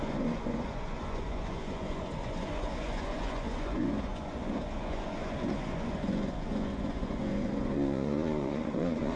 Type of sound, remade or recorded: remade